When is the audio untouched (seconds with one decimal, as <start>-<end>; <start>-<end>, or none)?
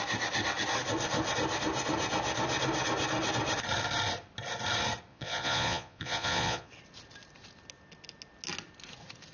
0.0-5.1; 6.7-9.3